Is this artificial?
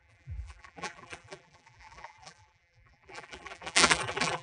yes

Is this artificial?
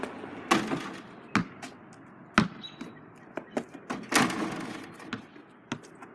no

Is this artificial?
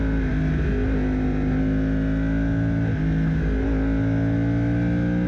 no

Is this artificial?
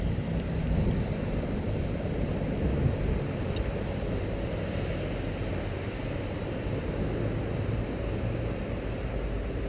no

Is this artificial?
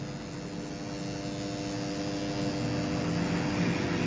no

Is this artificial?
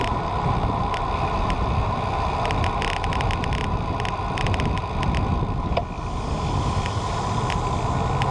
no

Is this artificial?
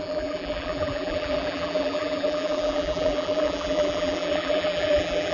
yes